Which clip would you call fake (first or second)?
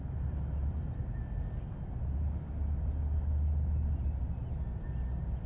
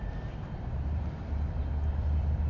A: second